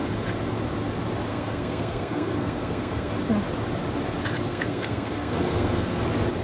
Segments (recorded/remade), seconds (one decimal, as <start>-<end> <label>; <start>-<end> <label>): 0.0-1.3 recorded; 1.3-3.1 remade; 3.1-4.5 recorded; 4.5-6.0 remade; 6.0-6.4 recorded